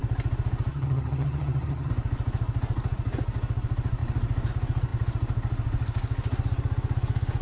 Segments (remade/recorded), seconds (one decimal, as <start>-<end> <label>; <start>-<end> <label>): 0.0-0.7 recorded; 0.7-1.9 remade; 1.9-7.4 recorded